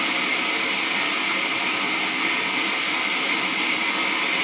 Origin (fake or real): real